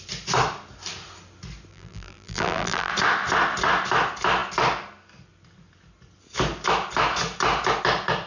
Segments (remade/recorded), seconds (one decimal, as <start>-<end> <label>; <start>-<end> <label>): 0.0-1.7 recorded; 1.7-2.9 remade; 2.9-8.3 recorded